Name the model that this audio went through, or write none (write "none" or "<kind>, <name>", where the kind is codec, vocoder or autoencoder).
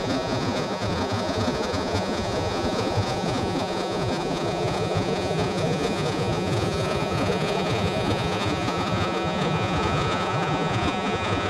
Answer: vocoder, Vocos